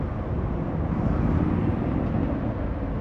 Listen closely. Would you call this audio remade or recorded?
recorded